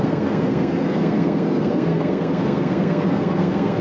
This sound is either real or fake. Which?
fake